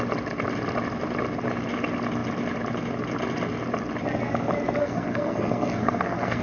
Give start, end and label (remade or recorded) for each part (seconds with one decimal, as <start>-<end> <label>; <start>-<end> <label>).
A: 0.0-4.8 recorded; 4.8-6.4 remade